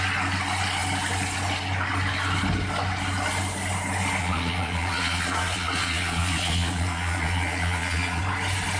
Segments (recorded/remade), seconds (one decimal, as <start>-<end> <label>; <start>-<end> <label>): 0.0-4.2 recorded; 4.2-8.2 remade; 8.2-8.8 recorded